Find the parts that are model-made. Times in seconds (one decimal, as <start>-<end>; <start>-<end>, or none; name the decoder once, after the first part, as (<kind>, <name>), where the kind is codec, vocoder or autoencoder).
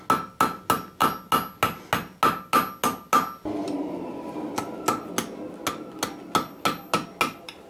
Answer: none